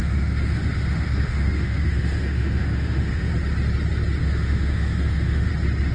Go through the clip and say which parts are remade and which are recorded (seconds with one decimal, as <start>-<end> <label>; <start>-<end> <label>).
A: 0.0-3.3 remade; 3.3-4.2 recorded; 4.2-5.5 remade; 5.5-5.9 recorded